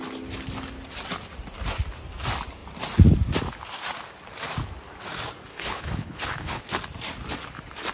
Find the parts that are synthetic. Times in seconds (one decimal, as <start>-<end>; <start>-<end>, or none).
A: 5.5-6.6